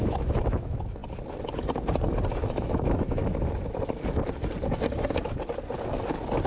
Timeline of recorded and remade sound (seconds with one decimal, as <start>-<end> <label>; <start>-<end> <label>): 0.0-1.0 remade; 1.0-2.4 recorded; 2.4-3.2 remade; 3.2-6.5 recorded